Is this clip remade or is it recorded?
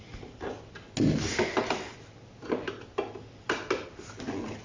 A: recorded